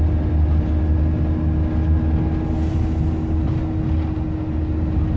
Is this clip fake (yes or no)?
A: no